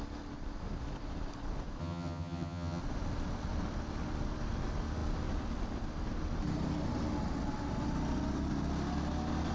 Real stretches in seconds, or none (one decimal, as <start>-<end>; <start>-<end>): 0.0-1.8; 2.8-9.5